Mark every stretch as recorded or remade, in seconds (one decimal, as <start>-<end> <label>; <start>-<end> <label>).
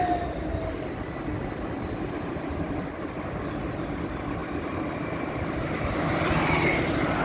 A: 0.0-7.2 recorded